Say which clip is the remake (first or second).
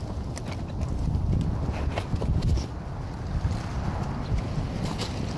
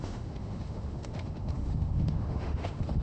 second